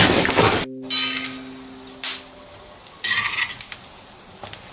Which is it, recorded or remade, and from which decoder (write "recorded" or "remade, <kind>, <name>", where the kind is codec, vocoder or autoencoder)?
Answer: recorded